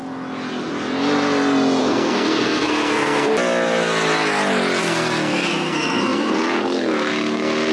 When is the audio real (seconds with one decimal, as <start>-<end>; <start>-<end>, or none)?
0.0-1.8; 3.3-4.8